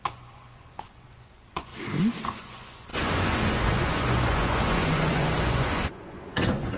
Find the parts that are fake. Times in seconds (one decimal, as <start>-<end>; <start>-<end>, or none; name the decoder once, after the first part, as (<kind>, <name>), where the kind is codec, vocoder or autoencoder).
0.0-1.7 (vocoder, Vocos); 2.2-6.8